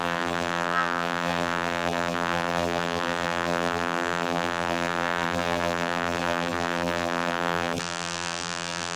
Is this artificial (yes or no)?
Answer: yes